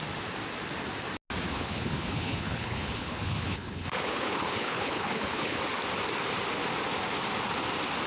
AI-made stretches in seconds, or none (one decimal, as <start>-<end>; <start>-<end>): 1.5-5.6